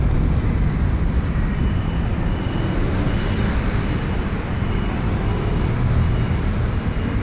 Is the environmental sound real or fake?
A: real